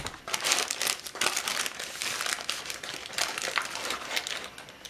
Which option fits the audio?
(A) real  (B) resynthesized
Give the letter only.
A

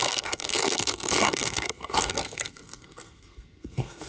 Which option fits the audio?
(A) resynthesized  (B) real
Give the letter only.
A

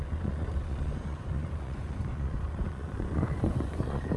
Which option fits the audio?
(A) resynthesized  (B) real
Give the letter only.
A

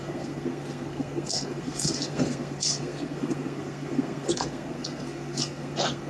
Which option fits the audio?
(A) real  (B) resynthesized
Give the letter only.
B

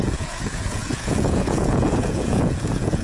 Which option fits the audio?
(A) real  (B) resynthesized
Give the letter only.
B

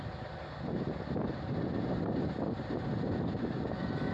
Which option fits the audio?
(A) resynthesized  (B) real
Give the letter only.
B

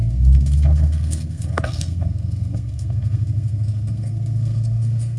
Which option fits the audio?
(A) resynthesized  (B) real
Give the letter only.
A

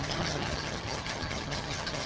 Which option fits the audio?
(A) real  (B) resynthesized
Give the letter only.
B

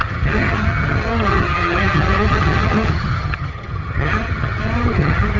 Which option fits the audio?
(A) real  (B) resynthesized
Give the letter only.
B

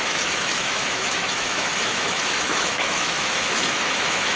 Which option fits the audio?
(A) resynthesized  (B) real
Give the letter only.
A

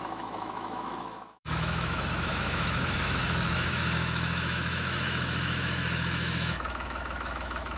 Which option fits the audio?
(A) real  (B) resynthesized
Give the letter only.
B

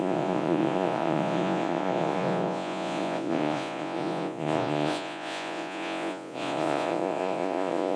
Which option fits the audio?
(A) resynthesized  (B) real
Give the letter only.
A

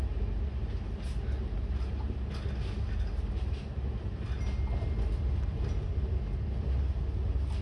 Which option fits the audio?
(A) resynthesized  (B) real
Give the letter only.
B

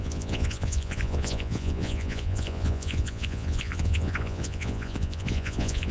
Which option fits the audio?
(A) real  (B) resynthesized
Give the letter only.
B